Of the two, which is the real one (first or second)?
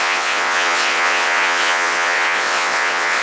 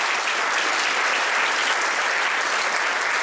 second